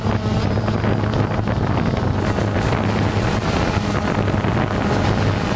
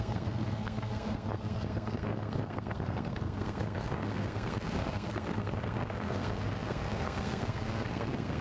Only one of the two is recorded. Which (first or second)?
first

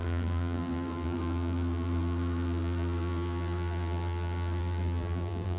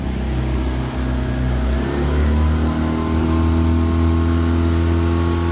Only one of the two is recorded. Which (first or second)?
second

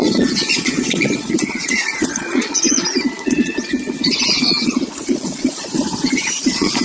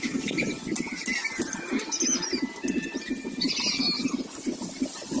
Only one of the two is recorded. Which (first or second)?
second